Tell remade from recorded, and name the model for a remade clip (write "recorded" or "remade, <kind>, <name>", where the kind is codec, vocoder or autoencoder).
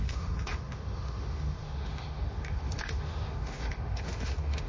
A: remade, autoencoder, DAC-VAE